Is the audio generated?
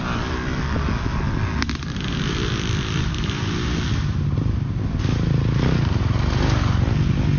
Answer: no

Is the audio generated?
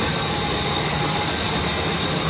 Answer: no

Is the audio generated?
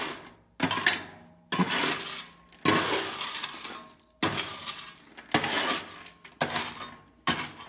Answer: no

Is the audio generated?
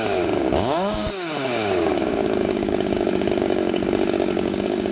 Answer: yes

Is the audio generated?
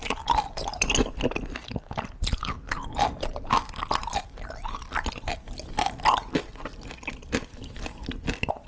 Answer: no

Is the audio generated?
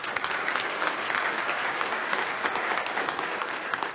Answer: yes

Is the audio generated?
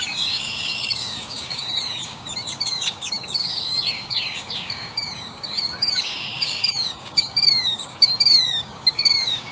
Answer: yes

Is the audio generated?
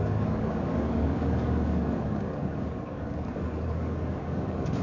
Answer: yes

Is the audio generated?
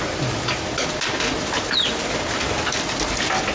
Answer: no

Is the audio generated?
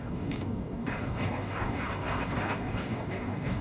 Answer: yes